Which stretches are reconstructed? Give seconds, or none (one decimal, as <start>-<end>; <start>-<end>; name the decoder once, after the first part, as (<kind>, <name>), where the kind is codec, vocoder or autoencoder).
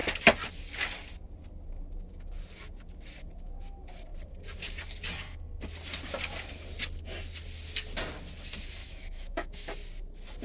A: 8.8-9.7 (autoencoder, DAC-VAE)